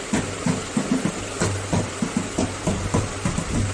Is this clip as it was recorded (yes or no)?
yes